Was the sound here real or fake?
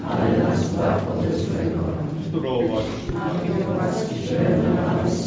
real